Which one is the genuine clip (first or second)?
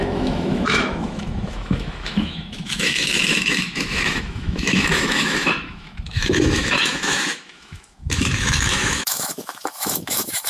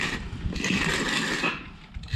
second